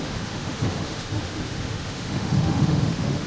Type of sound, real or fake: fake